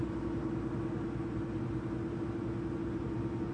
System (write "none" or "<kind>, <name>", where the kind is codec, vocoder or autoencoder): none